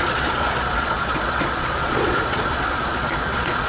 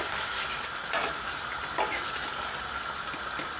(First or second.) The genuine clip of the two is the second